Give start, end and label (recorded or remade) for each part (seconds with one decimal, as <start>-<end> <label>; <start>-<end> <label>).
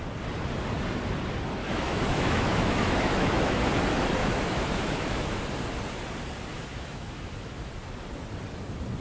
0.0-1.6 recorded; 1.6-3.7 remade; 3.7-4.2 recorded; 4.2-5.4 remade; 5.4-6.5 recorded; 6.5-7.7 remade; 7.7-9.0 recorded